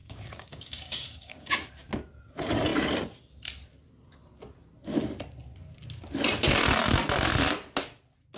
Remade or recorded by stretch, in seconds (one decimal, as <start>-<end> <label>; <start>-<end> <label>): 0.0-1.9 remade; 1.9-8.4 recorded